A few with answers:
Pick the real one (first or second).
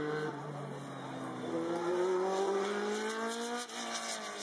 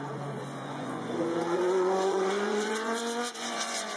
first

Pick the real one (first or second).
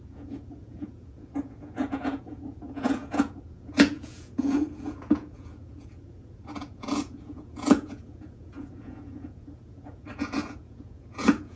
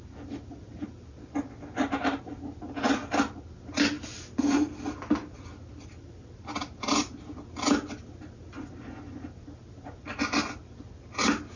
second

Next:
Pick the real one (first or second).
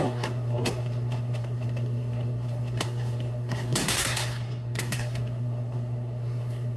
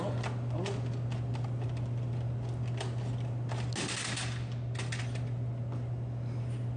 second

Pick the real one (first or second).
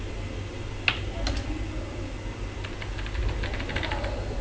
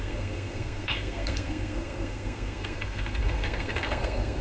first